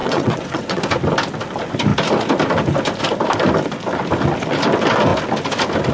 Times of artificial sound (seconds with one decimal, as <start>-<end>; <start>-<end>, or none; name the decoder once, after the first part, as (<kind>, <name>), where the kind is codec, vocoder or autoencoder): 0.0-0.8 (vocoder, WaveNeXt)

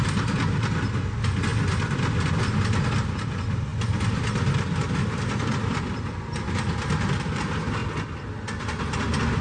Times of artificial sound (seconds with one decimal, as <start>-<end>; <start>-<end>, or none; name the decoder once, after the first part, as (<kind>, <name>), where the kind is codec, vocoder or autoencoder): none

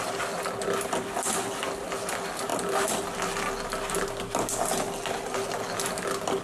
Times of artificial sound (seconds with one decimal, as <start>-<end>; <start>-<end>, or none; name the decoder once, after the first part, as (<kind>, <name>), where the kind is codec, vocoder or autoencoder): none

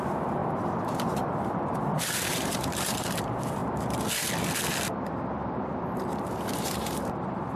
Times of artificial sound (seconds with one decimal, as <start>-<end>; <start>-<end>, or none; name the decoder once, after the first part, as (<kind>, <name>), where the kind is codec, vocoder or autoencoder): 0.0-0.4 (vocoder, BigVGAN v2); 1.9-3.6; 6.5-7.6

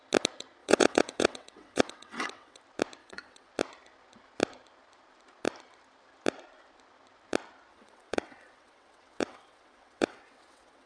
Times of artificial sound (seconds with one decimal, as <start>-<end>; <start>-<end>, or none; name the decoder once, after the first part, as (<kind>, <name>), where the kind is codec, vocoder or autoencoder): 0.6-2.6 (vocoder, WaveNeXt); 3.0-3.5; 7.7-10.9

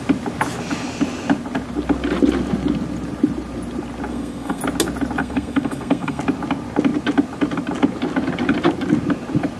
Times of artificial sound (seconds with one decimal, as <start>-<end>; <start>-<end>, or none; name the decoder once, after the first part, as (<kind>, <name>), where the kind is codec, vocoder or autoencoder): 4.1-4.6 (codec, SNAC); 5.2-6.2

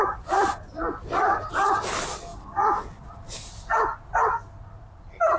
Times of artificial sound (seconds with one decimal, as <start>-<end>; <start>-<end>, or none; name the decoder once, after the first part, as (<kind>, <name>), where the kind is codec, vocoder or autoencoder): none